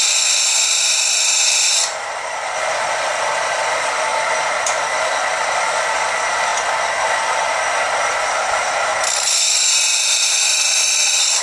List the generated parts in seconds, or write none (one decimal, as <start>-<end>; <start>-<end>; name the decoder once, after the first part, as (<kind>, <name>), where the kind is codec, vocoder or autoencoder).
0.0-4.1 (vocoder, BigVGAN v2); 4.9-6.5; 8.1-8.9; 10.8-11.4